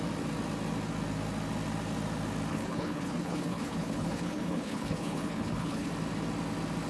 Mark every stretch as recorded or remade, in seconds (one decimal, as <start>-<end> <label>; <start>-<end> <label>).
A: 0.0-2.5 recorded; 2.5-5.9 remade; 5.9-6.9 recorded